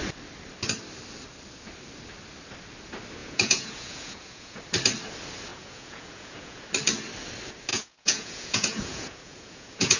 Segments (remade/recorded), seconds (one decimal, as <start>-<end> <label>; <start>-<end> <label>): 0.0-3.2 recorded; 3.2-4.6 remade; 4.6-5.5 recorded; 5.5-6.6 remade; 6.6-7.7 recorded; 7.7-10.0 remade